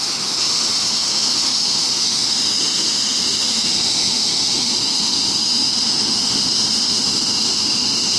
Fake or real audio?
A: fake